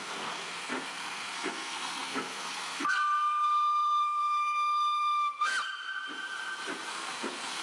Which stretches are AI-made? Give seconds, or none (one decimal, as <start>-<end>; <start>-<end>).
0.0-5.5; 6.9-7.6

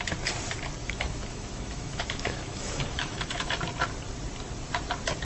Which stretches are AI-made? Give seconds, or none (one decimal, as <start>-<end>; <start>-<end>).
0.8-3.5

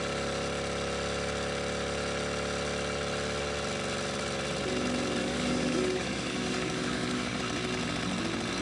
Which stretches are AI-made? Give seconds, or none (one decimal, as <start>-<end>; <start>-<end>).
5.2-7.4

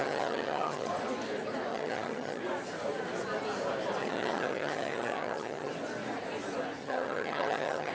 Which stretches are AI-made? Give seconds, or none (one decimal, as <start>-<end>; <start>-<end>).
0.0-0.9; 1.7-2.4; 4.0-5.7; 6.8-7.9

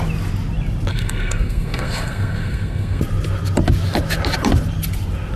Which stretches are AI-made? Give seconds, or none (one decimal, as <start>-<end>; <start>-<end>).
0.9-3.0

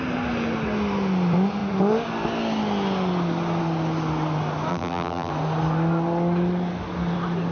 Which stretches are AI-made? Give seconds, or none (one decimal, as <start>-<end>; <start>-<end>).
4.7-5.3

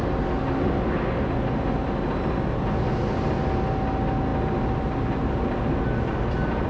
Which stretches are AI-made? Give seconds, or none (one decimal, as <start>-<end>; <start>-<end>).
none